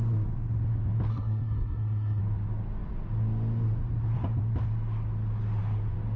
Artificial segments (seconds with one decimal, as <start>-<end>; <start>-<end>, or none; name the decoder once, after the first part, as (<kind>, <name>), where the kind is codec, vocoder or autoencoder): 1.1-2.2 (codec, SNAC)